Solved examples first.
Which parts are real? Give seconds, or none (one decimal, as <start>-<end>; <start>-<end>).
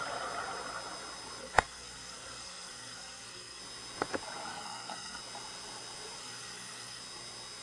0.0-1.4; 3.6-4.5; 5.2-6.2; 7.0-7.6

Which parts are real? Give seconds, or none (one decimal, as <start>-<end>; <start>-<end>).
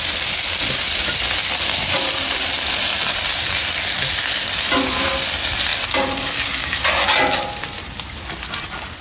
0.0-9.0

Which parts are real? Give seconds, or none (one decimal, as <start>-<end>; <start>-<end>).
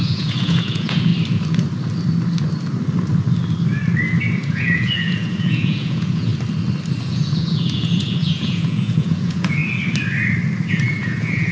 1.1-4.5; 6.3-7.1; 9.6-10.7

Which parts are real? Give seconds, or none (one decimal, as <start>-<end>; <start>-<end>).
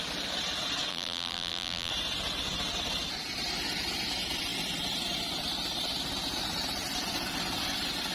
0.0-0.9; 1.9-8.1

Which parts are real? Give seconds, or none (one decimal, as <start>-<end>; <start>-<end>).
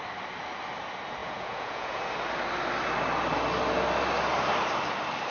0.0-1.2; 2.0-5.3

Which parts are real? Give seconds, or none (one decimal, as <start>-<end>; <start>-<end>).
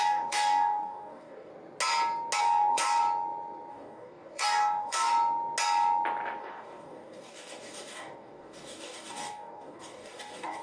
1.5-2.4; 3.0-3.7; 5.1-6.4